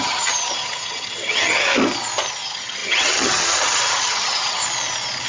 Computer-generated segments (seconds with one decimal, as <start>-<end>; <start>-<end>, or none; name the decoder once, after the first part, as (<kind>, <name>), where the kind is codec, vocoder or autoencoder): 0.0-1.7 (vocoder, HiFi-GAN); 2.3-4.6

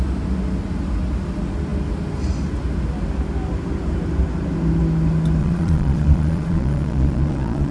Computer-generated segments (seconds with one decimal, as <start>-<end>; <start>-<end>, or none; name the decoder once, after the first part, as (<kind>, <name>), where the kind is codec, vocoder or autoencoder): 5.4-7.7 (vocoder, Vocos)

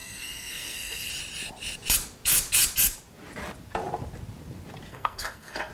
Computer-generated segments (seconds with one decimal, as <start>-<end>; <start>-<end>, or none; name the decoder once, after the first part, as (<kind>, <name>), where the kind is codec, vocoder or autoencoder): 0.0-1.1 (codec, SNAC); 4.9-5.7

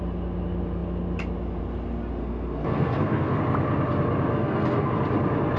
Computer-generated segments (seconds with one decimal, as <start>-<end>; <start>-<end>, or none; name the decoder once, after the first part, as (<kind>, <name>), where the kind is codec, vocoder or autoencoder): 2.2-3.4 (codec, SNAC); 4.3-4.9

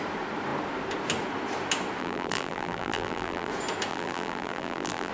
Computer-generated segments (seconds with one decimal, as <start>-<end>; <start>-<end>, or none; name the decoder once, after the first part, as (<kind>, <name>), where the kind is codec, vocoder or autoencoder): 2.0-3.5 (vocoder, BigVGAN v2); 3.9-5.1

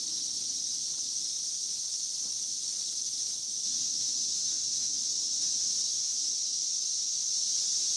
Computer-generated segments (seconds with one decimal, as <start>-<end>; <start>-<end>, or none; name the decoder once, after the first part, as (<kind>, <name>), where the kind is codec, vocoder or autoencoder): 3.4-5.4 (autoencoder, DAC-VAE); 5.9-7.3

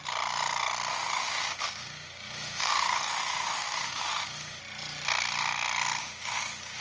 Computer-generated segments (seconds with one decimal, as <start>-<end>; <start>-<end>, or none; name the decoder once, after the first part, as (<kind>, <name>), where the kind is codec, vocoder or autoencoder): 0.9-4.6 (autoencoder, DAC-VAE); 6.0-6.8